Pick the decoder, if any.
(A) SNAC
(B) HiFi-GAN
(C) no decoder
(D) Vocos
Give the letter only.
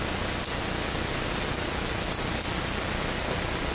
C